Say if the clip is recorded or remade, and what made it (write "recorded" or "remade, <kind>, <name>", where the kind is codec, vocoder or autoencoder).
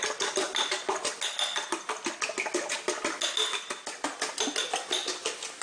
recorded